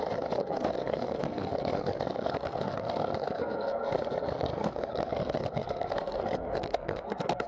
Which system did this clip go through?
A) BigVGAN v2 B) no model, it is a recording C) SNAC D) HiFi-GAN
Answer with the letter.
C